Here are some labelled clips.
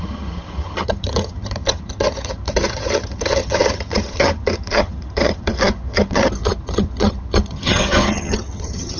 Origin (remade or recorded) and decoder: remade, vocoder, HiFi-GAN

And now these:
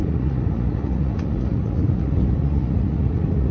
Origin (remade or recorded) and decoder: remade, vocoder, Vocos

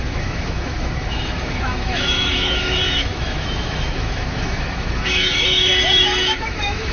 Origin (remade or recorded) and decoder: remade, autoencoder, DAC-VAE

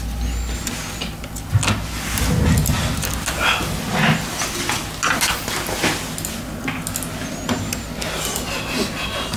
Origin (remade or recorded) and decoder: recorded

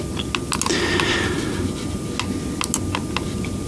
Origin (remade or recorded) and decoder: recorded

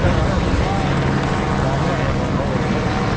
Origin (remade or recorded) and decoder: recorded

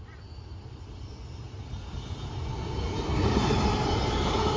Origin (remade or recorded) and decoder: recorded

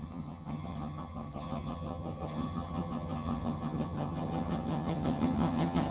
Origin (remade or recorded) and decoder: remade, vocoder, HiFi-GAN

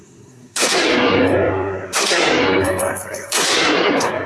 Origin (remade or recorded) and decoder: remade, codec, SNAC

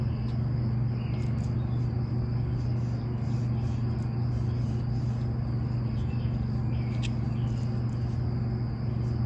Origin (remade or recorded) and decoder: recorded